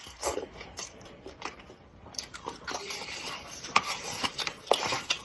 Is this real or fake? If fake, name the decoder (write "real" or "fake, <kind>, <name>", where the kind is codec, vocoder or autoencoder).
fake, vocoder, BigVGAN v2